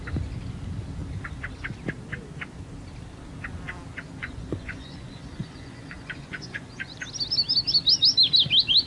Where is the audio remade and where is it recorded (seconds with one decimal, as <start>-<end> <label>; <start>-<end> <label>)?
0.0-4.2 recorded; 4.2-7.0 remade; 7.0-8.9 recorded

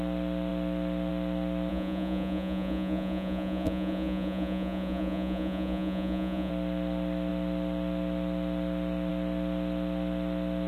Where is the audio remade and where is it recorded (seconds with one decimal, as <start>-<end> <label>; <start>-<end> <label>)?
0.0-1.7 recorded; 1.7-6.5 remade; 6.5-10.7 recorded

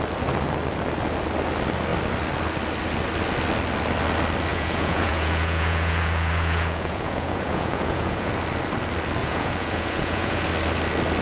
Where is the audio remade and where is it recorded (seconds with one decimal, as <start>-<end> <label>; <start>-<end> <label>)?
0.0-4.5 recorded; 4.5-8.3 remade; 8.3-9.2 recorded; 9.2-10.5 remade; 10.5-11.2 recorded

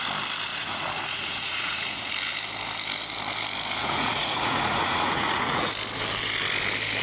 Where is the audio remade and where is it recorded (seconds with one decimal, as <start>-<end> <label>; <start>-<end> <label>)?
0.0-0.5 recorded; 0.5-2.1 remade; 2.1-3.8 recorded; 3.8-5.7 remade; 5.7-7.0 recorded

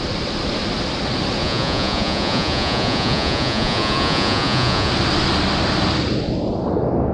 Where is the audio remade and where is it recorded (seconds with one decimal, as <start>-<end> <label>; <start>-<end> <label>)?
0.0-1.4 recorded; 1.4-4.9 remade; 4.9-7.1 recorded